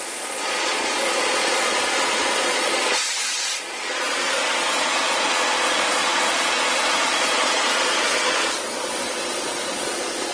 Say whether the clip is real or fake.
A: fake